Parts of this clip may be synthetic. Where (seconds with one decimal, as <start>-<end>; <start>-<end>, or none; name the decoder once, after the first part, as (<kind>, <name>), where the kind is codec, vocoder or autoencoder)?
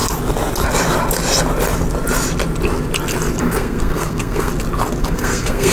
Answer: 3.4-4.5 (codec, SNAC); 5.0-5.7